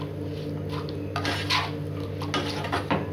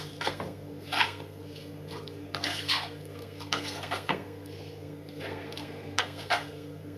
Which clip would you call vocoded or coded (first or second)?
second